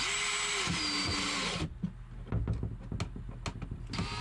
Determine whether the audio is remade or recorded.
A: recorded